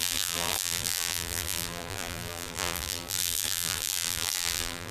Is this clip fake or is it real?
fake